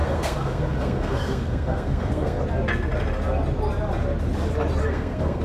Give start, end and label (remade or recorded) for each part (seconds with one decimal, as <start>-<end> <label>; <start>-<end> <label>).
0.0-2.4 remade; 2.4-4.8 recorded; 4.8-5.4 remade